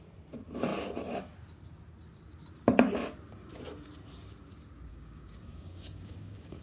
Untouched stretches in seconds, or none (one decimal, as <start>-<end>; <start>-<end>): 0.0-4.9